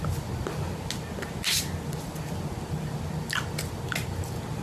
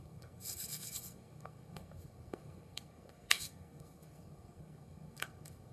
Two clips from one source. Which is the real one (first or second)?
first